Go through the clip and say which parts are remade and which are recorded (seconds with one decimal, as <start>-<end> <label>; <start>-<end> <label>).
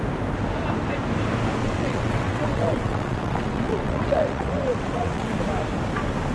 0.0-1.6 recorded; 1.6-5.4 remade; 5.4-6.3 recorded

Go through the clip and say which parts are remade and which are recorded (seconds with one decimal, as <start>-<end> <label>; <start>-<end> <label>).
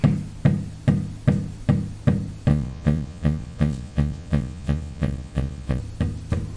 0.0-2.5 recorded; 2.5-5.8 remade; 5.8-6.6 recorded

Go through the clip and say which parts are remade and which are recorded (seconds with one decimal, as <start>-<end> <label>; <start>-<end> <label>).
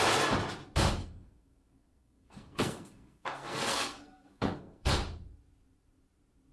0.0-1.0 recorded; 1.0-4.9 remade; 4.9-6.5 recorded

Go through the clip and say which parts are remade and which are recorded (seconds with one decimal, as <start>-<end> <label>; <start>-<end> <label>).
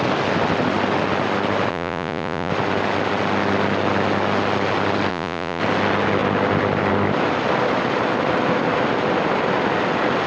0.0-1.7 recorded; 1.7-2.5 remade; 2.5-5.1 recorded; 5.1-5.6 remade; 5.6-10.3 recorded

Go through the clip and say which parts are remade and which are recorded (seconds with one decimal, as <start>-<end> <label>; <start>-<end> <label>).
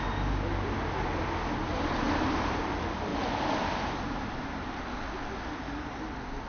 0.0-1.6 recorded; 1.6-2.7 remade; 2.7-3.1 recorded; 3.1-4.8 remade; 4.8-6.5 recorded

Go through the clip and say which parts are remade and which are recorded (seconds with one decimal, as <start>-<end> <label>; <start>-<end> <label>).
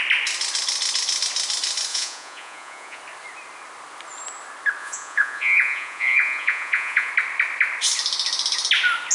0.0-1.9 recorded; 1.9-3.0 remade; 3.0-4.8 recorded; 4.8-7.1 remade; 7.1-9.1 recorded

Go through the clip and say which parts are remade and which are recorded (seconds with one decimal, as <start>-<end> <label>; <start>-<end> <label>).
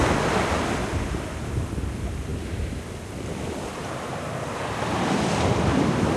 0.0-6.2 recorded